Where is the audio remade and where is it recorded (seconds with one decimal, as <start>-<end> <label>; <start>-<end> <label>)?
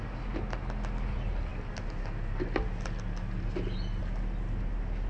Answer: 0.0-5.1 recorded